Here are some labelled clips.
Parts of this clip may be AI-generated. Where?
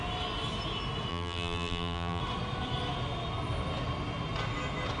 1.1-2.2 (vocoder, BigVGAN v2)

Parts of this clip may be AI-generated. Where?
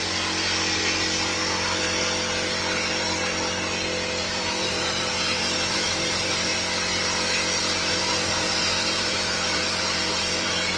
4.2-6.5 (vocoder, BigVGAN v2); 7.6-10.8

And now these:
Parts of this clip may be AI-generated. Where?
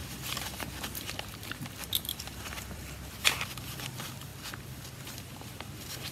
2.2-4.3 (vocoder, BigVGAN v2); 4.9-6.1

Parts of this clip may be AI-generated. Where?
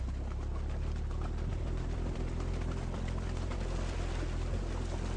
1.5-4.6 (vocoder, BigVGAN v2)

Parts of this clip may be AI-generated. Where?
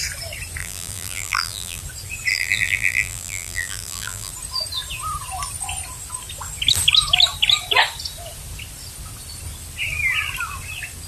0.6-1.8 (vocoder, BigVGAN v2); 2.3-4.3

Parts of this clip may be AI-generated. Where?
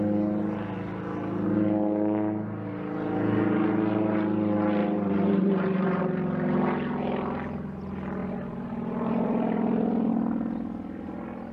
4.8-6.0 (vocoder, BigVGAN v2); 8.2-10.1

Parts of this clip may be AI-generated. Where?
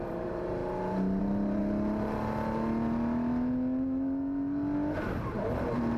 0.0-0.6 (vocoder, BigVGAN v2); 1.2-1.6; 5.2-6.0